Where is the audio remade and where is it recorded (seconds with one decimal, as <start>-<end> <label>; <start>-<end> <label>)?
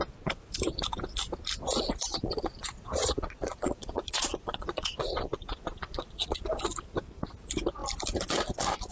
0.0-2.1 recorded; 2.1-6.6 remade; 6.6-8.9 recorded